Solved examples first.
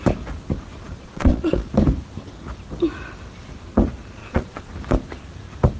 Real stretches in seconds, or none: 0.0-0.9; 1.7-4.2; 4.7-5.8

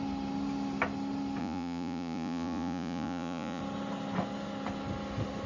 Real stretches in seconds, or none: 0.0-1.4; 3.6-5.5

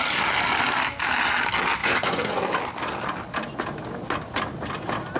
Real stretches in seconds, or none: 0.0-1.8; 2.4-5.2

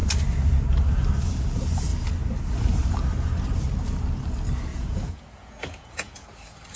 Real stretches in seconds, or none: 0.0-4.7